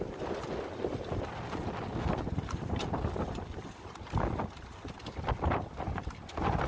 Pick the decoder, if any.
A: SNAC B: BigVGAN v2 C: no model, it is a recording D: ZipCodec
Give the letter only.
C